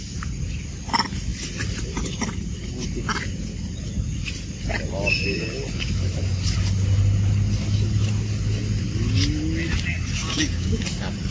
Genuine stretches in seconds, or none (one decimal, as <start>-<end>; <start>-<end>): 0.0-10.2; 10.8-11.3